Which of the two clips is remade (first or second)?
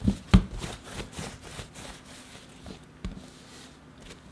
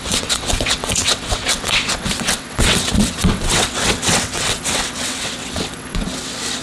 second